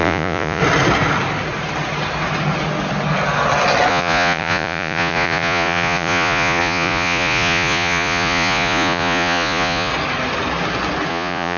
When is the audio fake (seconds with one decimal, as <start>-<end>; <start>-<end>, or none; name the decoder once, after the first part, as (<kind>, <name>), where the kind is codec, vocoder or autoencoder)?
0.0-0.6 (vocoder, Vocos); 3.9-9.9; 11.1-11.6